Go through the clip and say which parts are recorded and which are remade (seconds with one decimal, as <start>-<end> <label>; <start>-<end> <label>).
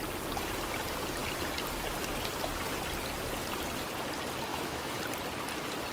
0.0-4.5 recorded; 4.5-5.0 remade; 5.0-5.9 recorded